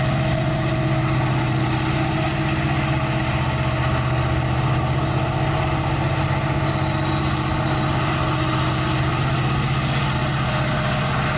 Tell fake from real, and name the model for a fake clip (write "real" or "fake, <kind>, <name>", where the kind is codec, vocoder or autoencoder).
real